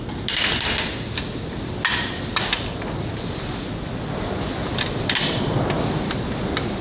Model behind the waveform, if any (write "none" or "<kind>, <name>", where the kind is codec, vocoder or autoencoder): none